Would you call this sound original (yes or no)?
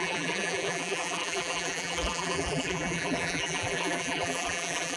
no